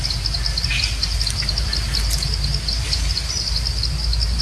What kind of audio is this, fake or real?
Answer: real